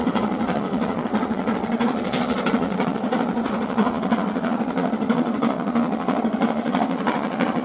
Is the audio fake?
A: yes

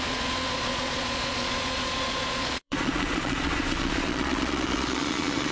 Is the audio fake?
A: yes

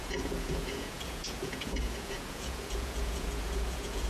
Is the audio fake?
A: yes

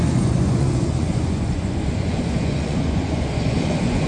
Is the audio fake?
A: yes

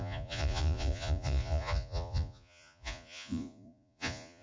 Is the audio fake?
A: yes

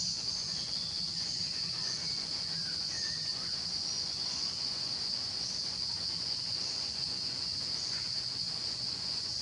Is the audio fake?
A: yes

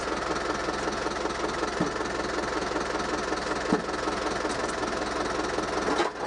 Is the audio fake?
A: no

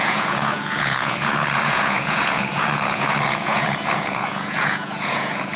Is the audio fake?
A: yes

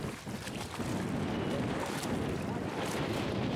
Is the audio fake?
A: no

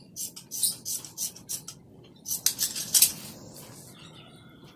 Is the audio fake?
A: no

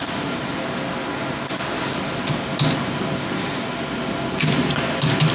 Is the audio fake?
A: no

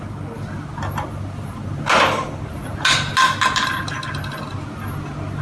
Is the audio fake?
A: no